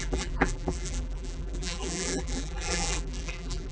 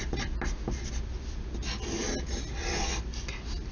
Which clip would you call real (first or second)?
second